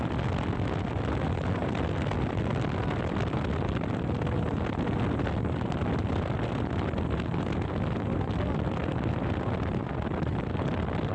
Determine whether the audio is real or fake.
real